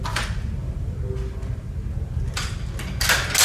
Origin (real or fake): real